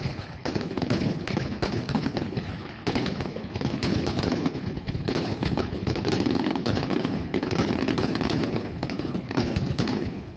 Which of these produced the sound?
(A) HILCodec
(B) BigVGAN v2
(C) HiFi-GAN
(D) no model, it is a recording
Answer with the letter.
A